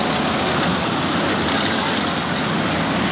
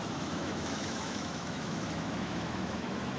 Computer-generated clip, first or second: second